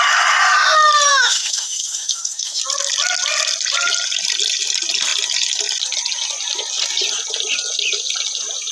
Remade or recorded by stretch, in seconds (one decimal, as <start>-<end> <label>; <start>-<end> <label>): 0.0-1.1 recorded; 1.1-2.6 remade; 2.6-8.7 recorded